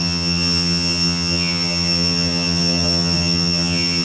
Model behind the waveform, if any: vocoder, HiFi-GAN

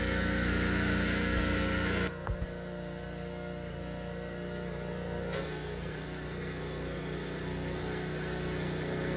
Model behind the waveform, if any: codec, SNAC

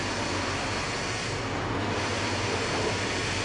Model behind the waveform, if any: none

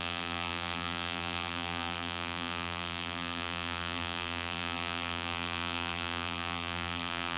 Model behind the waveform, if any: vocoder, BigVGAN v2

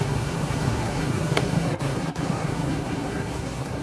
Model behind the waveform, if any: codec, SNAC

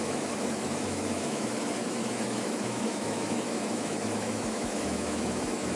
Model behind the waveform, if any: autoencoder, DAC-VAE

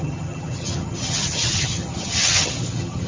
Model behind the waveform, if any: vocoder, HiFi-GAN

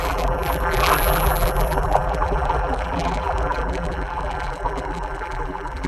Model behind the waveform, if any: vocoder, BigVGAN v2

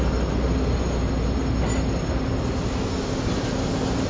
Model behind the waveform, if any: none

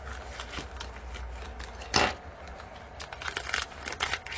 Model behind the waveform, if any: none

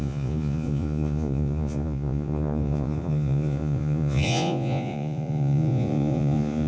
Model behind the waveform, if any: vocoder, Vocos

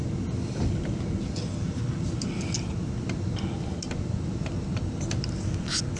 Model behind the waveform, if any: none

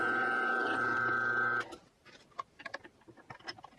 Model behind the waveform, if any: none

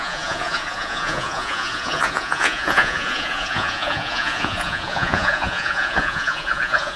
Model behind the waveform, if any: vocoder, Vocos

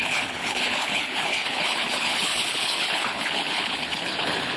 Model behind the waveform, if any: codec, HILCodec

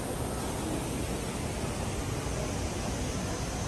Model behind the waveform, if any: none